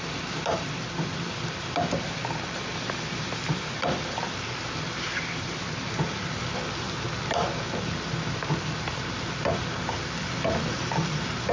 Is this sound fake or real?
fake